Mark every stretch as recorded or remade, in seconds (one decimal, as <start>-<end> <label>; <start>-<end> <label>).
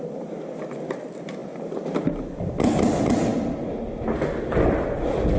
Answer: 0.0-5.4 recorded